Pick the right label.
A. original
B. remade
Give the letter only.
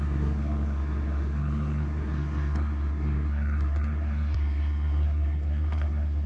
B